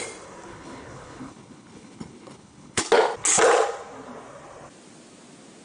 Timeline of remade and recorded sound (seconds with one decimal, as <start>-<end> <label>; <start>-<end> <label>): 0.0-0.5 recorded; 0.5-2.8 remade; 2.8-5.6 recorded